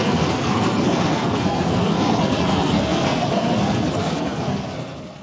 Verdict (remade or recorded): remade